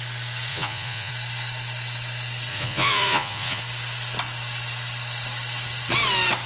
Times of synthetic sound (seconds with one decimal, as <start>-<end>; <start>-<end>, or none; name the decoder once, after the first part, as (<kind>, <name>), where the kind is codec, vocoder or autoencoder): 0.5-1.1 (vocoder, Vocos); 2.5-3.6